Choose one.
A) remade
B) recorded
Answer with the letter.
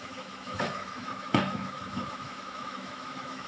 A